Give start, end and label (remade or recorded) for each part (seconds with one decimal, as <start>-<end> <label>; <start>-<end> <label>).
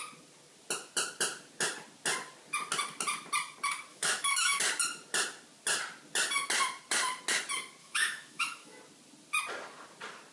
0.0-3.9 recorded; 3.9-4.6 remade; 4.6-7.8 recorded; 7.8-8.8 remade; 8.8-10.3 recorded